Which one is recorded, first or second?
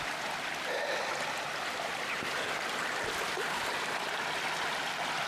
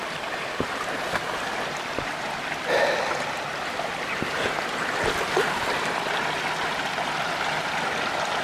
second